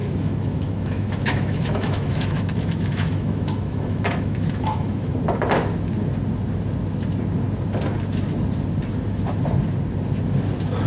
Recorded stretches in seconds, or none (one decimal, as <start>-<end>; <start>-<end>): 5.1-10.9